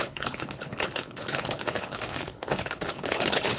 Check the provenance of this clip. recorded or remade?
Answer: remade